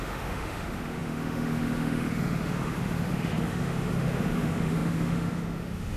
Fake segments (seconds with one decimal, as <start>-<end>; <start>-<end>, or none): 0.0-6.0